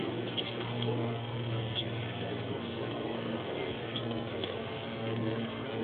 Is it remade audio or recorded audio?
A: remade